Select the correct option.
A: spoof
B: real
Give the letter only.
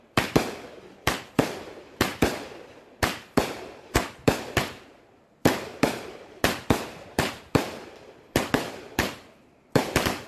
A